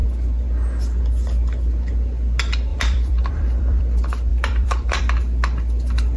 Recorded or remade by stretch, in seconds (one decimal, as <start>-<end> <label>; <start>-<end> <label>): 0.0-2.7 recorded; 2.7-3.8 remade; 3.8-4.3 recorded; 4.3-5.0 remade; 5.0-6.2 recorded